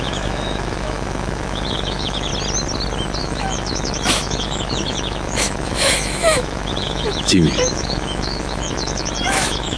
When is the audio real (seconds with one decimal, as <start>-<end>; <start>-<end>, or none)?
2.3-3.2